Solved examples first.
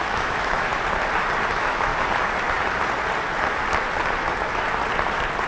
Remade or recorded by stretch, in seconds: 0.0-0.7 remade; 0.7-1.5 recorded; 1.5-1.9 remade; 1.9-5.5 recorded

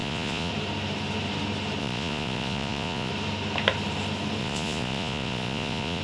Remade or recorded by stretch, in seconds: 0.0-0.5 remade; 0.5-1.8 recorded; 1.8-3.1 remade; 3.1-4.4 recorded; 4.4-6.0 remade

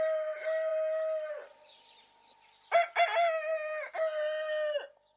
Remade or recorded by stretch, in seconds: 0.0-5.2 recorded

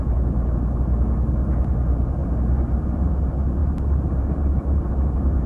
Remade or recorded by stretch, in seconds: 0.0-2.2 recorded; 2.2-3.1 remade; 3.1-3.6 recorded; 3.6-4.9 remade; 4.9-5.5 recorded

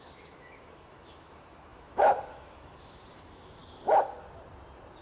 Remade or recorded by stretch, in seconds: 0.0-3.6 remade; 3.6-5.0 recorded

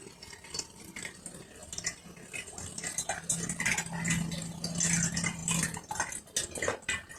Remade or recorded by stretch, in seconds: 0.0-7.2 recorded